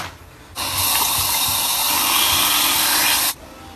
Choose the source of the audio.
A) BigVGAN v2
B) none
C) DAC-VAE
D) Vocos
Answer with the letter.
B